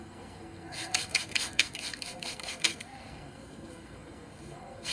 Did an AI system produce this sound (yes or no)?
yes